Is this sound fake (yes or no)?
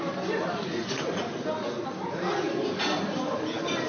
no